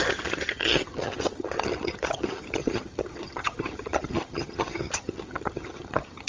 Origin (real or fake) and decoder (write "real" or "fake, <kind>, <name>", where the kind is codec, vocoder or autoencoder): fake, vocoder, HiFi-GAN